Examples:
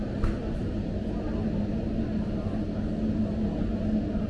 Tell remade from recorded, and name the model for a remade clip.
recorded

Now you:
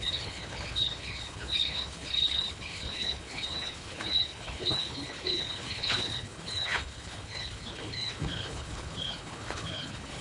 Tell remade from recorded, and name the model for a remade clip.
remade, codec, HILCodec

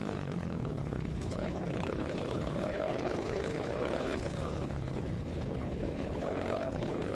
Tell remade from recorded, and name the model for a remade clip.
remade, codec, HILCodec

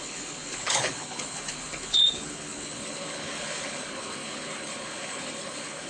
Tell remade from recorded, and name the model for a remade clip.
remade, codec, HILCodec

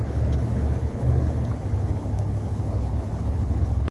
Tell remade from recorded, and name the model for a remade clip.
remade, codec, HILCodec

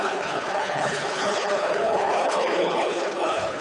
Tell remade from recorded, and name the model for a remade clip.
remade, codec, HILCodec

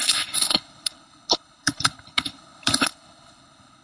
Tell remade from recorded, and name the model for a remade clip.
remade, codec, HILCodec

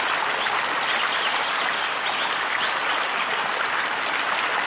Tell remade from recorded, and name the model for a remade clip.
recorded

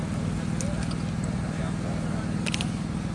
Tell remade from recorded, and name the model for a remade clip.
recorded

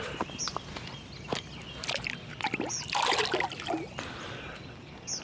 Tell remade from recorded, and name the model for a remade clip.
recorded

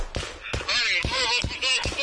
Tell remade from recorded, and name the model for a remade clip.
recorded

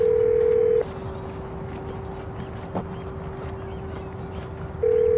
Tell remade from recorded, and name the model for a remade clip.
recorded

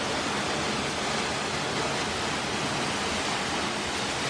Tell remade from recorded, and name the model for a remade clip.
recorded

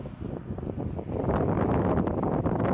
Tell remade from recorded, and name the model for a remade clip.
recorded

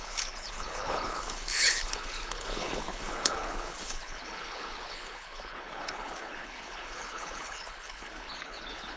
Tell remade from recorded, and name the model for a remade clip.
remade, codec, HILCodec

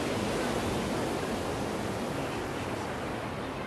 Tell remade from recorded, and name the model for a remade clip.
recorded